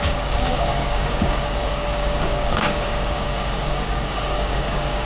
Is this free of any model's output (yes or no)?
no